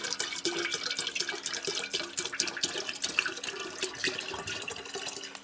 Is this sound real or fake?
real